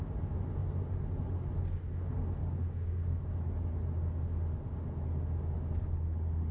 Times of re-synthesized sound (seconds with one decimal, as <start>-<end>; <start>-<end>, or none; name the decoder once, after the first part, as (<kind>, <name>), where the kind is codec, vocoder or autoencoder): 2.4-3.2 (codec, DAC)